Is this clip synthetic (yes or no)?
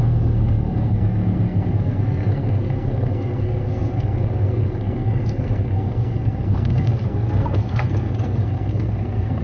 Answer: yes